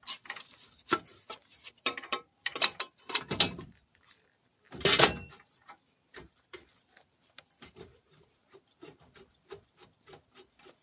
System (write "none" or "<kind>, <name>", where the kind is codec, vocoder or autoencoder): vocoder, BigVGAN v2